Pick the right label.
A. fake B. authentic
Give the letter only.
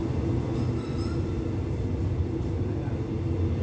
B